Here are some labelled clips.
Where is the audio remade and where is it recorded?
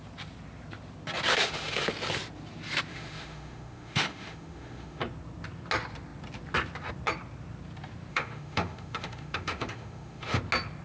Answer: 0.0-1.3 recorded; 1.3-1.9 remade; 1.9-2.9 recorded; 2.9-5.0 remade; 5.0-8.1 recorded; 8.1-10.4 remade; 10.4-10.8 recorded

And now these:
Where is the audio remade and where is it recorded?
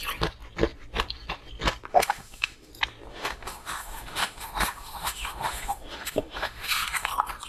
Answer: 0.0-1.9 recorded; 1.9-2.7 remade; 2.7-3.1 recorded; 3.1-7.1 remade; 7.1-7.5 recorded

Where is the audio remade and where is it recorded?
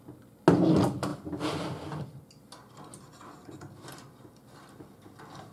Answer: 0.0-5.5 recorded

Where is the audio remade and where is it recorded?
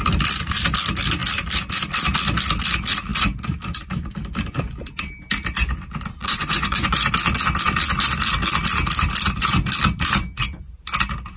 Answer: 0.0-6.2 recorded; 6.2-7.1 remade; 7.1-11.4 recorded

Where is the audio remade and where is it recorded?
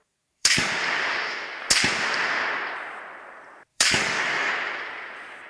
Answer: 0.0-0.7 remade; 0.7-3.7 recorded; 3.7-4.5 remade; 4.5-5.5 recorded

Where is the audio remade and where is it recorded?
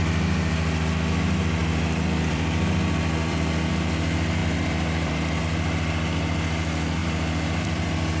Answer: 0.0-1.6 recorded; 1.6-3.7 remade; 3.7-4.4 recorded; 4.4-5.4 remade; 5.4-7.0 recorded; 7.0-8.2 remade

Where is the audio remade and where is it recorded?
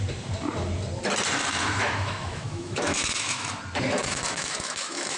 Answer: 0.0-1.8 recorded; 1.8-3.5 remade; 3.5-4.0 recorded; 4.0-5.2 remade